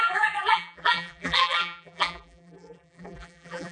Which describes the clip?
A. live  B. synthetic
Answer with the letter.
B